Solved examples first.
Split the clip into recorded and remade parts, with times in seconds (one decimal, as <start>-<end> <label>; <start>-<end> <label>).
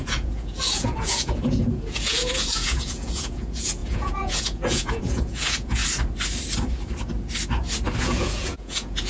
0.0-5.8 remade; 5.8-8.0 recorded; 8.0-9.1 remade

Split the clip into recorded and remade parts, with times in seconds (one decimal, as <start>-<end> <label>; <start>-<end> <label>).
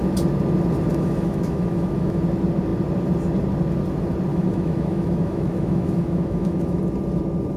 0.0-0.9 recorded; 0.9-2.2 remade; 2.2-4.3 recorded; 4.3-6.8 remade; 6.8-7.6 recorded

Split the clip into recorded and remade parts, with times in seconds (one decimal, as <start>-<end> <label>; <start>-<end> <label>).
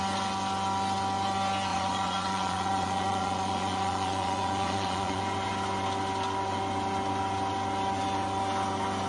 0.0-1.7 recorded; 1.7-5.2 remade; 5.2-9.1 recorded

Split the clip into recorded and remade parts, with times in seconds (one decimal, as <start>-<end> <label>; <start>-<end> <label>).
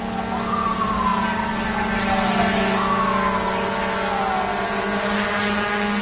0.0-6.0 recorded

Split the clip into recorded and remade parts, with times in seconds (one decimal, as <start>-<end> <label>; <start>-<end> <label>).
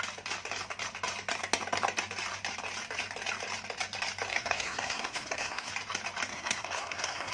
0.0-4.3 recorded; 4.3-5.7 remade; 5.7-6.3 recorded; 6.3-7.3 remade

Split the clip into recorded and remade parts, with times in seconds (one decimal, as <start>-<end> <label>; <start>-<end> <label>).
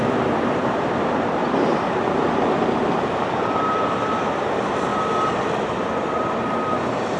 0.0-4.9 remade; 4.9-5.9 recorded; 5.9-7.2 remade